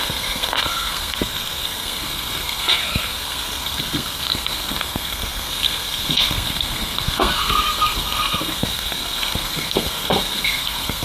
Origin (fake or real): fake